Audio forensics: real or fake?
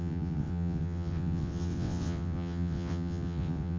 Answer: fake